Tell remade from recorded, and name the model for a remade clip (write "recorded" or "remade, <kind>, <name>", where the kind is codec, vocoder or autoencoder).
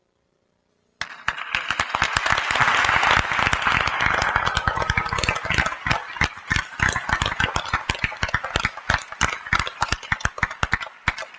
recorded